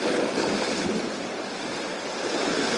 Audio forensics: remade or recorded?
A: recorded